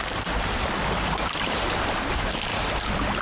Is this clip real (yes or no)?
yes